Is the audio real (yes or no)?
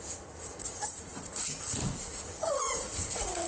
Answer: no